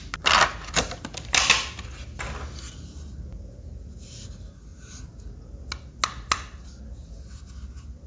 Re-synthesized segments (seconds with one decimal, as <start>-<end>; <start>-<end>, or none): none